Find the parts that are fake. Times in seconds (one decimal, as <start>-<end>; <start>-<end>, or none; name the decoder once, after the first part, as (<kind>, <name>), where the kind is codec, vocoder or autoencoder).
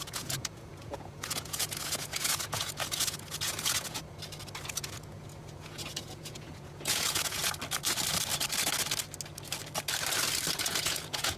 0.0-4.0 (vocoder, Vocos); 4.6-7.4; 10.6-11.4